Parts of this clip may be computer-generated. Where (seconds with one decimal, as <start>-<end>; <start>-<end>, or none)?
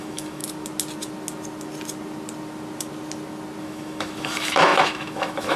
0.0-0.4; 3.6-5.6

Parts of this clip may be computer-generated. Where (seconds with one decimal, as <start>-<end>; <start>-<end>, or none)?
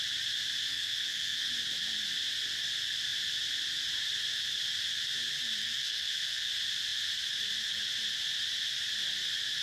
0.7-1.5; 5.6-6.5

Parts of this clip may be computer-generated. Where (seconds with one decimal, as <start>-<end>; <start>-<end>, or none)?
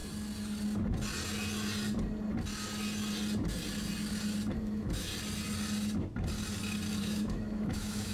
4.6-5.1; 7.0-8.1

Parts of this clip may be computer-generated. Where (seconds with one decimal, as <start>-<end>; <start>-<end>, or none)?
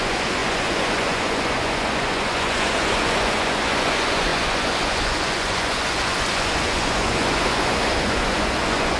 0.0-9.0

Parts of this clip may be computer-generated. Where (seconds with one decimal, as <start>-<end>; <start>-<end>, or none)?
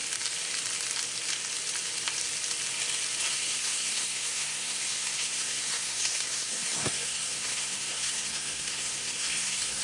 3.3-9.8